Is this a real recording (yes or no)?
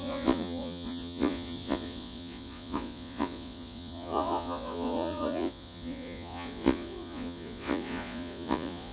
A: no